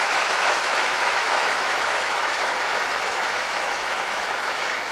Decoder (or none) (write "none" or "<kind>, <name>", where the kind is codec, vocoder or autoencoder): autoencoder, DAC-VAE